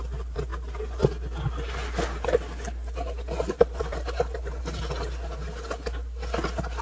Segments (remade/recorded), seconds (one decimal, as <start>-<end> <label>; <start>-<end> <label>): 0.0-6.8 recorded